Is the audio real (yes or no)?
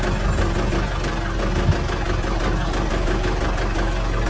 yes